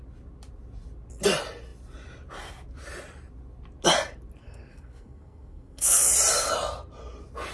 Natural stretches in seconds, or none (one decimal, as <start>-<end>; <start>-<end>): 0.0-4.4; 6.1-7.5